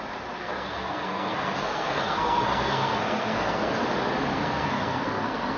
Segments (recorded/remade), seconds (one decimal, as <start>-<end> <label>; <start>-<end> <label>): 0.0-0.4 recorded; 0.4-3.8 remade; 3.8-4.3 recorded; 4.3-5.6 remade